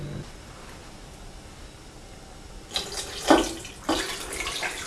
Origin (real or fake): real